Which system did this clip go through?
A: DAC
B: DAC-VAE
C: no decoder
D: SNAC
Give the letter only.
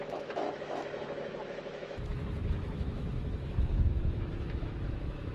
B